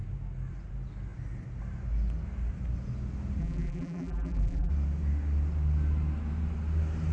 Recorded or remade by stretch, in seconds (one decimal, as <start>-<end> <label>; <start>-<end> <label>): 0.0-3.4 recorded; 3.4-4.7 remade; 4.7-7.1 recorded

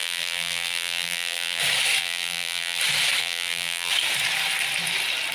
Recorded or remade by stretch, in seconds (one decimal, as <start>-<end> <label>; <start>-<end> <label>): 0.0-1.6 remade; 1.6-2.0 recorded; 2.0-2.8 remade; 2.8-3.2 recorded; 3.2-3.9 remade; 3.9-5.3 recorded